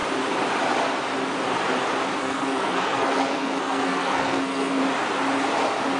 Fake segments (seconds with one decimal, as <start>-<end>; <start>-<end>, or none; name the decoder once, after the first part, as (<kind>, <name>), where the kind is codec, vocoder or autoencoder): 2.2-4.8 (codec, SNAC)